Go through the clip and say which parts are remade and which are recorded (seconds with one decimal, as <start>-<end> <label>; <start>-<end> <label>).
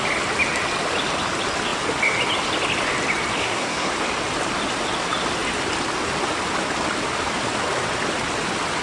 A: 0.0-3.4 recorded; 3.4-3.9 remade; 3.9-8.8 recorded